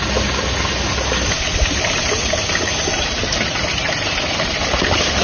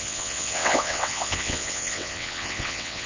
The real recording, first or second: first